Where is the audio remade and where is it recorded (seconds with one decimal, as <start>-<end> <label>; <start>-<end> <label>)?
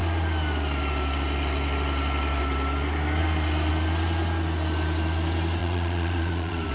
0.0-5.6 recorded; 5.6-6.7 remade